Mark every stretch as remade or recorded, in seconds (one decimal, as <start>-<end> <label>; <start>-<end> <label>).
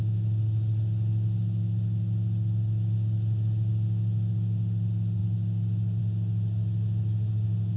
0.0-7.8 recorded